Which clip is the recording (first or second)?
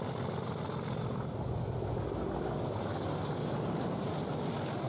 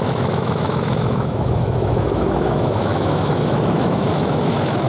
first